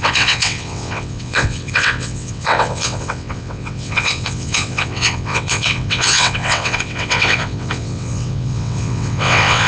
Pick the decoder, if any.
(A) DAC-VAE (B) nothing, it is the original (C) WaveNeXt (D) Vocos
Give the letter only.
C